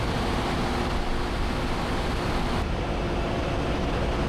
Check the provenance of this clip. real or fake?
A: real